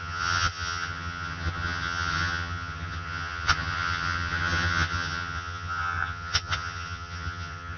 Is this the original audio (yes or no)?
no